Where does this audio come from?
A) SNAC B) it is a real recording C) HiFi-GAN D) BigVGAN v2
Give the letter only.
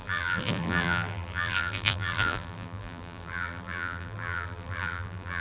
D